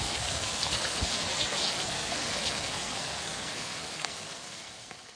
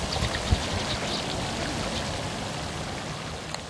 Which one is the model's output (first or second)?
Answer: first